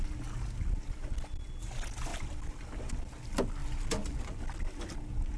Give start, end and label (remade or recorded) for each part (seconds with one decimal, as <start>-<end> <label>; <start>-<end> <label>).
0.0-5.4 recorded